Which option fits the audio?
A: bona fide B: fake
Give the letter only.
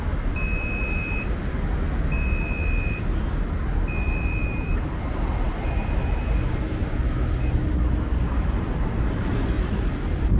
A